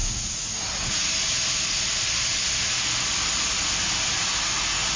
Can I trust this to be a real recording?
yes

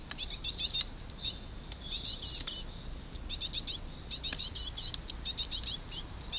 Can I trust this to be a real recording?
yes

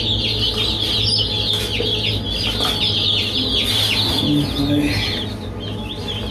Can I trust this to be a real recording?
yes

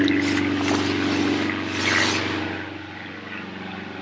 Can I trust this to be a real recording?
yes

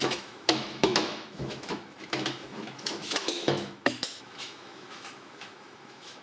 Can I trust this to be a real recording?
no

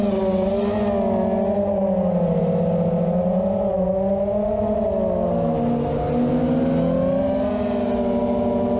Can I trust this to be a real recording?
yes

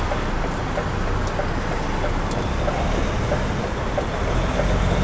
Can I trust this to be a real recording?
yes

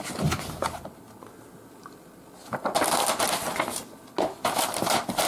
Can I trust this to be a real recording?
yes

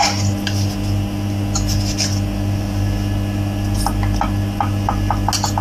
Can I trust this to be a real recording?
yes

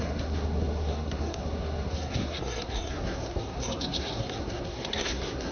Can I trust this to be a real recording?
no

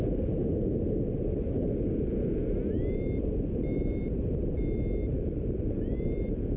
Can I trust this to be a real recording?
yes